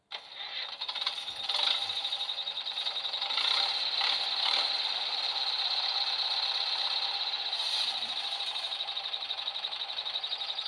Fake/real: real